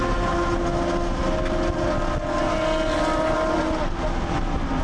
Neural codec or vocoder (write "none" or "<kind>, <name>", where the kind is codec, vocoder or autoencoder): none